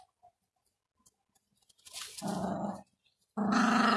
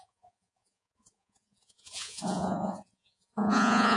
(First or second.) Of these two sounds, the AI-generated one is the second